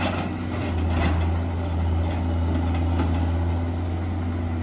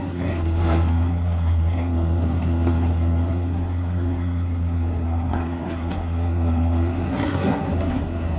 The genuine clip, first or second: first